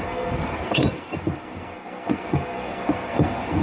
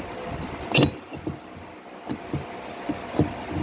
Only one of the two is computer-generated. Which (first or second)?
first